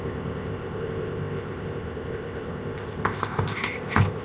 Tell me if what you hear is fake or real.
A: fake